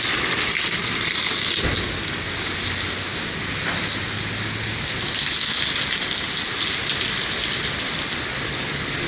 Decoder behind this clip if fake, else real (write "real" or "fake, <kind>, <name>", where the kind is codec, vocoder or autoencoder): real